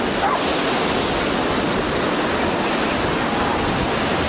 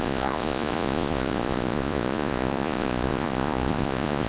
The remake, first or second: second